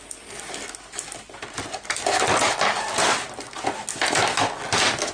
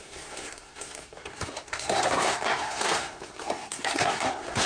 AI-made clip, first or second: second